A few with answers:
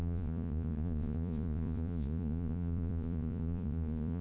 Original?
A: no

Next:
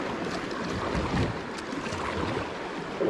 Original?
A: yes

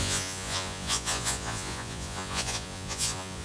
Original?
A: no